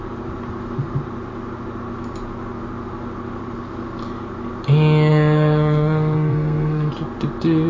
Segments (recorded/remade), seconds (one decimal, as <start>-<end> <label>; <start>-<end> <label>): 0.0-5.1 recorded; 5.1-6.9 remade; 6.9-7.7 recorded